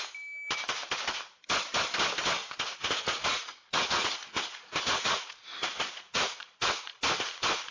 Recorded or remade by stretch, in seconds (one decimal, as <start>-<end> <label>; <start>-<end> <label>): 0.0-2.4 recorded; 2.4-7.0 remade; 7.0-7.7 recorded